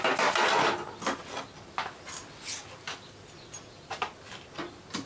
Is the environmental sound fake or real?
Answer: real